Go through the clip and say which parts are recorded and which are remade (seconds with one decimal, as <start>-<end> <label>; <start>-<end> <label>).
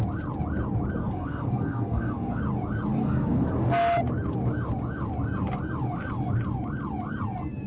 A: 0.0-1.0 recorded; 1.0-2.4 remade; 2.4-3.0 recorded; 3.0-3.5 remade; 3.5-7.7 recorded